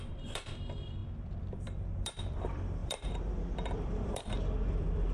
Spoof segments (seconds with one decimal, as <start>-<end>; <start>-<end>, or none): 0.0-5.1